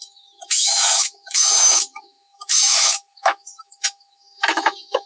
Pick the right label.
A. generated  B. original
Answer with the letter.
A